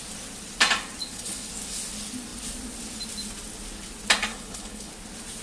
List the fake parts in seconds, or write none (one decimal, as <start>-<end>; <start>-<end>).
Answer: 1.0-1.5; 4.3-4.9

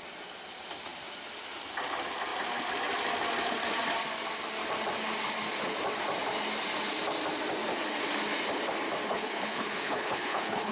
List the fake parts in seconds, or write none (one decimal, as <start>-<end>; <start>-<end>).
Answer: 9.1-10.7

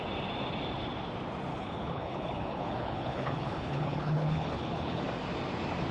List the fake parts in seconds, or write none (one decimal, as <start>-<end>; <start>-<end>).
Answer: 1.5-5.0

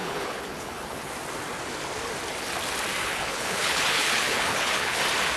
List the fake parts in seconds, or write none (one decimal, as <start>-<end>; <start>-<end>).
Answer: 0.0-1.1; 3.0-5.0

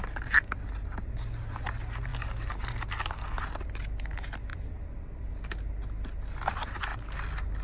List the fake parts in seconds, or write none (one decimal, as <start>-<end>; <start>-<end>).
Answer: none

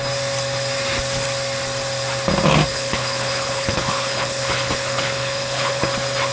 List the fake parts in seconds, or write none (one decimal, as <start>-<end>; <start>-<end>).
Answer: 2.7-5.8

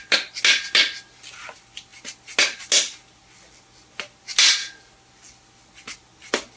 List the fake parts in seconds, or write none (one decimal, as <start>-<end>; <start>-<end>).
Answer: none

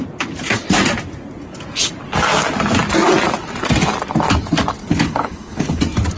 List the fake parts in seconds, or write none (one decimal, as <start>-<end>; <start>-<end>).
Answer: 4.8-5.8